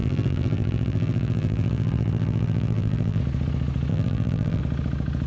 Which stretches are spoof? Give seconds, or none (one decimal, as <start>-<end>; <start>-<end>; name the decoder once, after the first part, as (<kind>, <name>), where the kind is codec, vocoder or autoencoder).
0.0-3.2 (vocoder, BigVGAN v2); 3.9-4.6